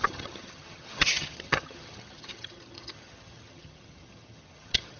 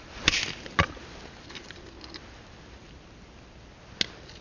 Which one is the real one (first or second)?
second